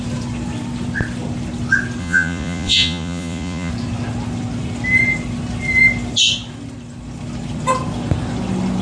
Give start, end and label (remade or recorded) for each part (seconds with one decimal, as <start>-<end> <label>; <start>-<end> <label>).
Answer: 0.0-2.0 recorded; 2.0-3.7 remade; 3.7-8.8 recorded